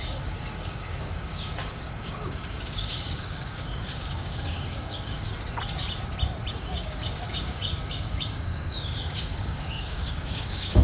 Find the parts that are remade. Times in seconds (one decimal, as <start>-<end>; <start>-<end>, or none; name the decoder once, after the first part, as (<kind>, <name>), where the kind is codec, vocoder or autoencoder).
0.0-5.3 (codec, DAC); 6.5-10.8

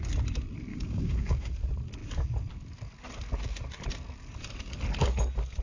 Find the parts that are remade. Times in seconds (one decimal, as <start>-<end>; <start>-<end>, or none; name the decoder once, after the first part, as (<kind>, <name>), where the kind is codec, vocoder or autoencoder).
0.7-1.5 (codec, DAC)

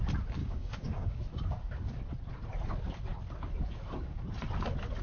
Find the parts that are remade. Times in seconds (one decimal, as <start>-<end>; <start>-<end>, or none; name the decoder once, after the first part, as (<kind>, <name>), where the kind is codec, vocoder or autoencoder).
0.4-1.2 (codec, DAC)